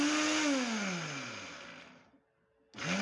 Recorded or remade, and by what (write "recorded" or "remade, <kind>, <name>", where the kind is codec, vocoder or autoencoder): recorded